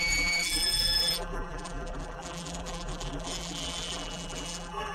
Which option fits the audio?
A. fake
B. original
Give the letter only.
A